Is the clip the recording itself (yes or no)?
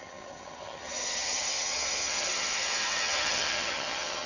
no